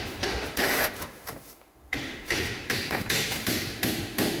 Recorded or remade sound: remade